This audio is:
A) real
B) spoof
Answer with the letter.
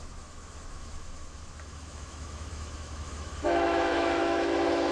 B